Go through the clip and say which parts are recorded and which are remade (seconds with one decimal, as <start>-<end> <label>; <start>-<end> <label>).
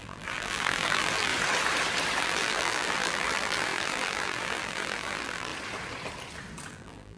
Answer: 0.0-1.3 remade; 1.3-2.2 recorded; 2.2-5.5 remade; 5.5-6.7 recorded; 6.7-7.2 remade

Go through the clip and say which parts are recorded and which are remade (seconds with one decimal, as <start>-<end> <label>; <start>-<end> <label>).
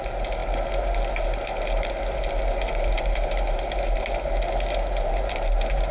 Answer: 0.0-5.9 recorded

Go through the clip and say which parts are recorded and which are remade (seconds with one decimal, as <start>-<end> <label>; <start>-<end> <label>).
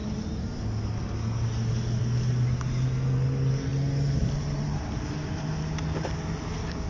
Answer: 0.0-6.9 recorded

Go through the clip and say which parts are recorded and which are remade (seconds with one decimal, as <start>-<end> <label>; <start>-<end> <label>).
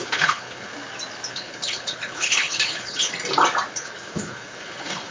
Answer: 0.0-0.7 remade; 0.7-1.3 recorded; 1.3-3.1 remade; 3.1-3.7 recorded; 3.7-5.1 remade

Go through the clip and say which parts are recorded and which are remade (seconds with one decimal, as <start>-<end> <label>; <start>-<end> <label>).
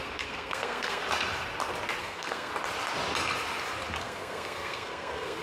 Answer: 0.0-1.0 remade; 1.0-2.0 recorded; 2.0-2.5 remade; 2.5-4.0 recorded; 4.0-5.4 remade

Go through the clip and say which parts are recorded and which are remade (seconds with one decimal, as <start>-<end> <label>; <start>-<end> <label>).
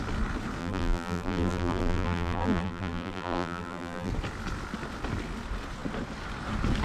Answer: 0.0-0.6 recorded; 0.6-4.1 remade; 4.1-6.8 recorded